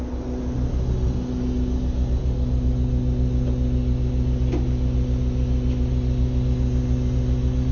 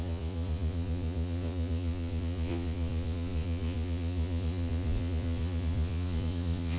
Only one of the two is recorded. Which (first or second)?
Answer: first